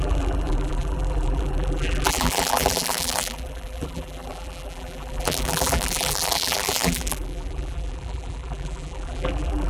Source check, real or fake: fake